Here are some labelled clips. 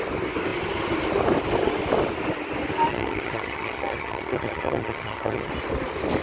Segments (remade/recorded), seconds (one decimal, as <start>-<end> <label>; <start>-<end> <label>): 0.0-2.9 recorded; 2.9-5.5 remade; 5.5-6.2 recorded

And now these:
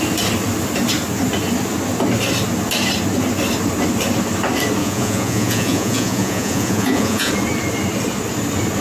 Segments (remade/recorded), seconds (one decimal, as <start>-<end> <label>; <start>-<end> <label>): 0.0-4.8 recorded; 4.8-7.3 remade; 7.3-8.8 recorded

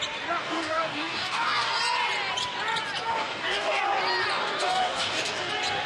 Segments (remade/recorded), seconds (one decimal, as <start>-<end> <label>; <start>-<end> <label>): 0.0-0.4 recorded; 0.4-1.8 remade; 1.8-3.1 recorded; 3.1-3.8 remade; 3.8-4.3 recorded; 4.3-5.5 remade; 5.5-5.9 recorded

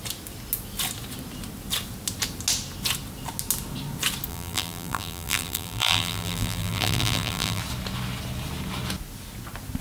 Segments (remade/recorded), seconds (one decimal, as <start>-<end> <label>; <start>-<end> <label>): 0.0-4.3 recorded; 4.3-7.6 remade; 7.6-9.8 recorded

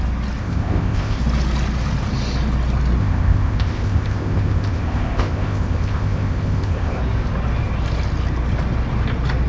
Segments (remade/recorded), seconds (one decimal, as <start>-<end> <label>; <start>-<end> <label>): 0.0-0.4 recorded; 0.4-1.2 remade; 1.2-3.0 recorded; 3.0-7.0 remade; 7.0-9.5 recorded

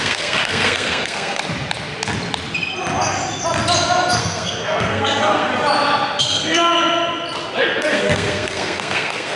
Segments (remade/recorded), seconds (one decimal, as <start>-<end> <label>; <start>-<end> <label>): 0.0-1.4 remade; 1.4-4.2 recorded; 4.2-5.5 remade; 5.5-6.2 recorded; 6.2-6.7 remade; 6.7-7.6 recorded; 7.6-9.4 remade